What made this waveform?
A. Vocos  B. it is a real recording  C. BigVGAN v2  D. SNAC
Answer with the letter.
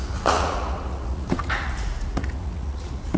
A